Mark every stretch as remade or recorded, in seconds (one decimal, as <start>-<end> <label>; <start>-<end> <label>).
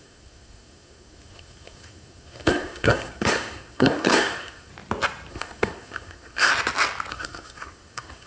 0.0-4.7 remade; 4.7-5.3 recorded; 5.3-6.5 remade; 6.5-7.1 recorded; 7.1-8.3 remade